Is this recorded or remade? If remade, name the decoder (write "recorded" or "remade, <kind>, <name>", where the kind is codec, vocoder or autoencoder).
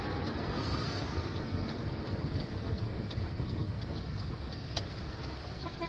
remade, codec, SNAC